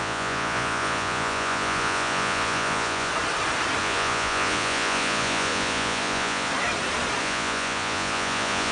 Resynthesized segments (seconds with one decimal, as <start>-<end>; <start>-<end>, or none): 0.0-3.1; 3.8-6.5; 7.2-8.7